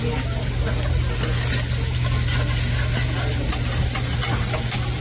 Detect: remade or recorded recorded